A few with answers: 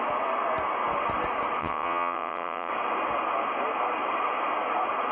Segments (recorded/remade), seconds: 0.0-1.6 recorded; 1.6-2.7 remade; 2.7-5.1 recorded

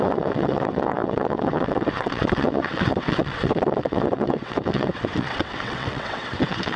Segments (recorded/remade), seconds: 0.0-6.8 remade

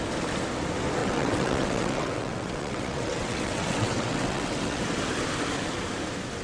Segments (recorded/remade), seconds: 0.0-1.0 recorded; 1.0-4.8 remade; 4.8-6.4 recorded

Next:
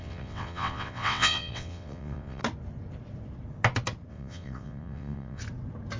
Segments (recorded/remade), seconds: 0.0-2.4 remade; 2.4-4.1 recorded; 4.1-5.4 remade; 5.4-6.0 recorded